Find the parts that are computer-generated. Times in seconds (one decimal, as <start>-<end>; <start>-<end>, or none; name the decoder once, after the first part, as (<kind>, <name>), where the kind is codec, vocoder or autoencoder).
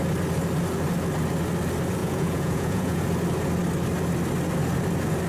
2.0-3.0 (vocoder, Vocos)